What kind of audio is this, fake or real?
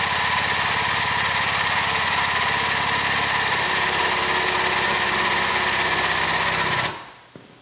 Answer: real